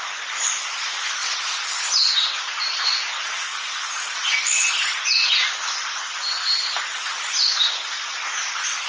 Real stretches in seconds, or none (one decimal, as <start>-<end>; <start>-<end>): 0.0-8.9